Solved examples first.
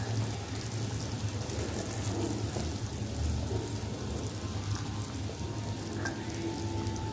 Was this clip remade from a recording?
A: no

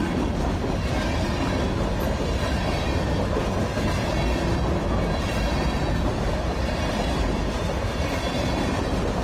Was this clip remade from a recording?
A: no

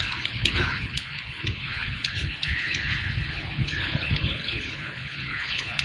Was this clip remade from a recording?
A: yes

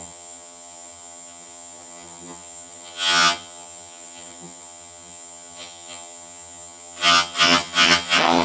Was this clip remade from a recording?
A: yes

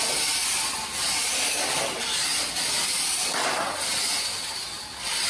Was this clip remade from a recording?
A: no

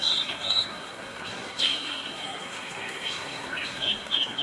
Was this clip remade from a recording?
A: yes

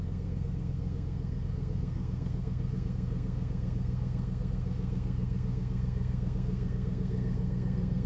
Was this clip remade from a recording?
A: yes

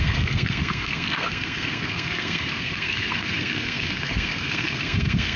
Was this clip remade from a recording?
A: yes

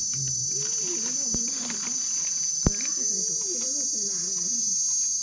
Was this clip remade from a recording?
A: no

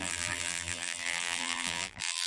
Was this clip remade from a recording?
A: yes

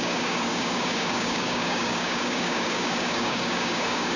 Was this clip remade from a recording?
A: yes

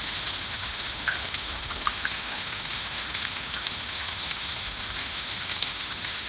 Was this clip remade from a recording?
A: yes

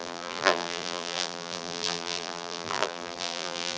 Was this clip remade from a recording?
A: yes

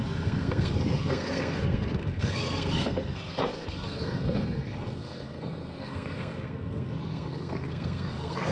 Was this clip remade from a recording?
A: yes